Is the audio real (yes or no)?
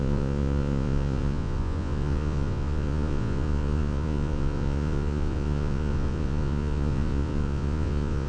no